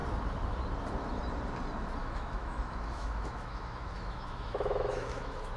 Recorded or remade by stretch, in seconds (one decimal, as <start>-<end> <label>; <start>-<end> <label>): 0.0-2.0 recorded; 2.0-5.6 remade

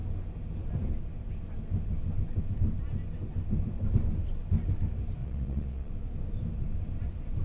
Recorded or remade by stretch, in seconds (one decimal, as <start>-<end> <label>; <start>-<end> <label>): 0.0-5.2 recorded; 5.2-5.9 remade; 5.9-7.4 recorded

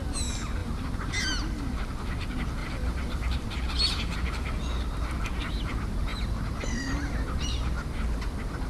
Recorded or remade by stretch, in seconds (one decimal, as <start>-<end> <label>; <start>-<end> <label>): 0.0-0.6 recorded; 0.6-1.2 remade; 1.2-2.6 recorded; 2.6-4.6 remade; 4.6-7.0 recorded; 7.0-7.5 remade; 7.5-8.7 recorded